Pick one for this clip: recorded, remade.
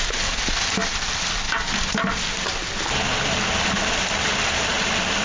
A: recorded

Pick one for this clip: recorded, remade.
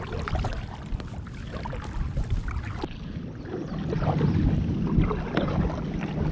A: recorded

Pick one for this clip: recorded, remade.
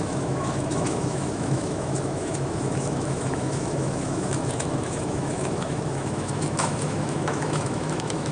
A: remade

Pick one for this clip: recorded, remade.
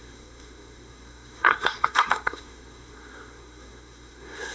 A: remade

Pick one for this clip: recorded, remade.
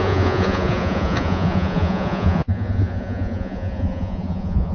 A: remade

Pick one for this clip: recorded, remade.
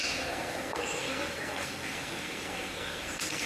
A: remade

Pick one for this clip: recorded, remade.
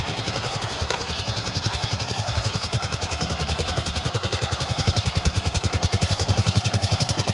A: remade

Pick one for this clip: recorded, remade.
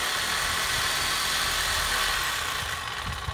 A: recorded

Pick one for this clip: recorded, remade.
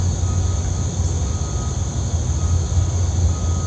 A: recorded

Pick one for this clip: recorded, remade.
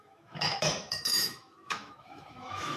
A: remade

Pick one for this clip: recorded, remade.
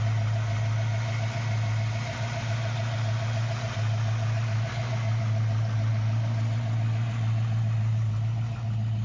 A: recorded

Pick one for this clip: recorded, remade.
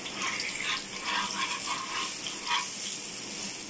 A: recorded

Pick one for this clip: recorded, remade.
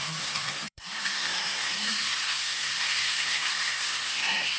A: remade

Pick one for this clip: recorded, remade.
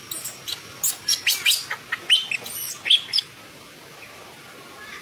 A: recorded